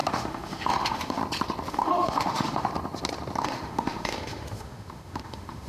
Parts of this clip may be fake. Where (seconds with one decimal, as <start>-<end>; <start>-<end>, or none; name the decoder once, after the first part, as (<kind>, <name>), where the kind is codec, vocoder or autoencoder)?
0.0-1.2 (autoencoder, DAC-VAE); 1.7-2.7; 3.4-5.7